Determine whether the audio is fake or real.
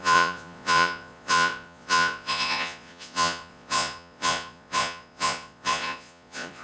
fake